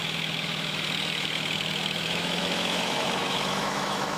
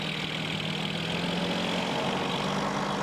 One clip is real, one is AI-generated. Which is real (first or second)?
second